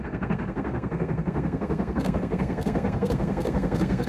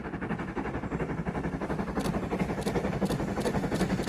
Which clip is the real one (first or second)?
second